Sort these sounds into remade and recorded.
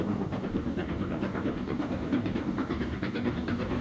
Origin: remade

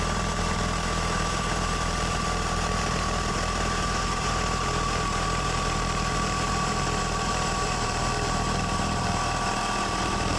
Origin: remade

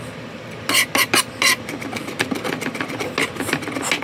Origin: recorded